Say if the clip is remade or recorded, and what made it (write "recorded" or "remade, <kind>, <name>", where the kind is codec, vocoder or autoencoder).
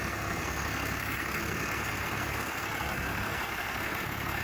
remade, codec, SNAC